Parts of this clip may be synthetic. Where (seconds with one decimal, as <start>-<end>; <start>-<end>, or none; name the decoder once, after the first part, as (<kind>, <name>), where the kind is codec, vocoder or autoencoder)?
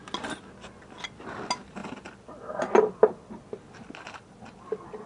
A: none